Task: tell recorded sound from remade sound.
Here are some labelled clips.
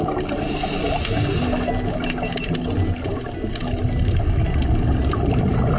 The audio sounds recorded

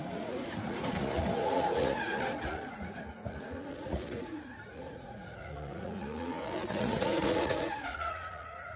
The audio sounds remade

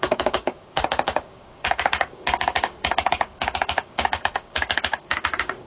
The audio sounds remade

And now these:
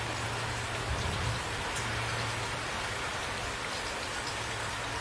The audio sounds recorded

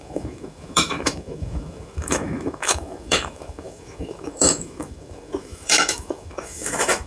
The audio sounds remade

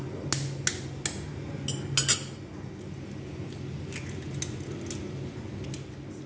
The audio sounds recorded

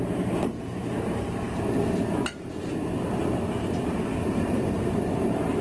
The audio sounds remade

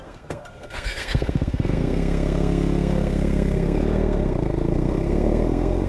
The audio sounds remade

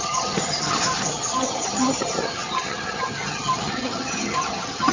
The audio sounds remade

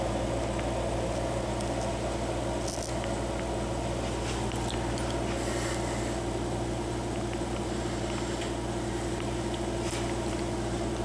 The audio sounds recorded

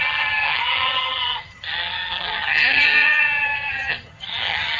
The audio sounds remade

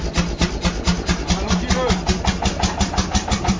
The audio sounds recorded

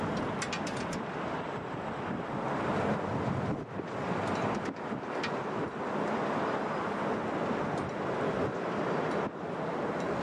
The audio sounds remade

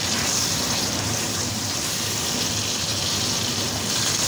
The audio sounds remade